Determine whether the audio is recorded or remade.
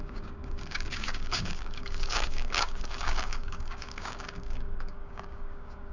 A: remade